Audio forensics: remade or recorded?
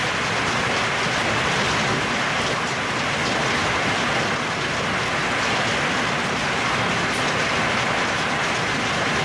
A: recorded